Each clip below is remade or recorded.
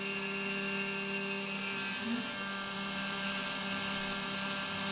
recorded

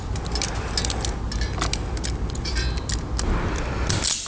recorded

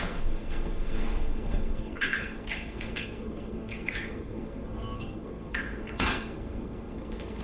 remade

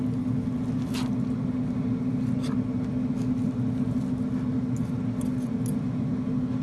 recorded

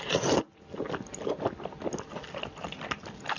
recorded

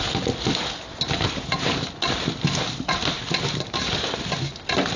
recorded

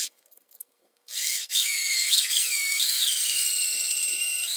remade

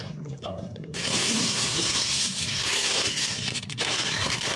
remade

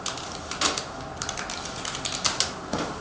recorded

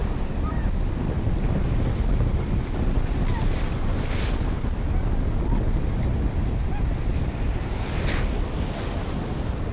recorded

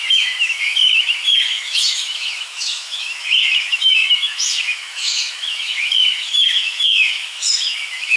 remade